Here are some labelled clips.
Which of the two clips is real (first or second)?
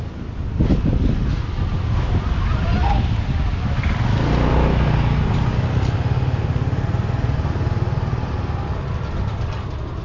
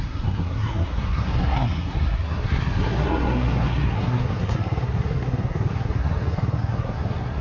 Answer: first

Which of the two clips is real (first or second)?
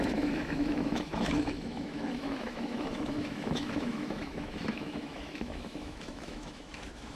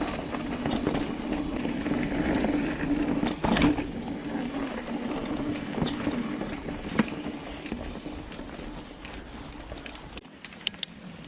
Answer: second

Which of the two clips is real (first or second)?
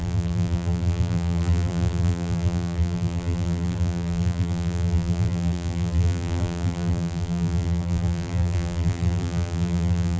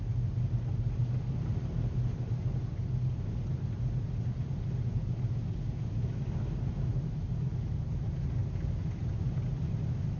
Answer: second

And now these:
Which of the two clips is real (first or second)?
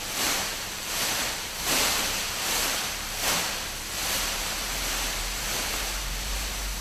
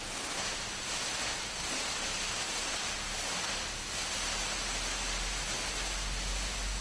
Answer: second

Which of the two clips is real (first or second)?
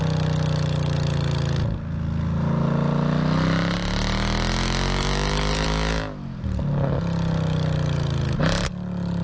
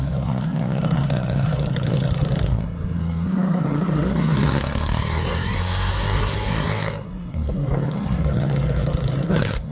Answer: first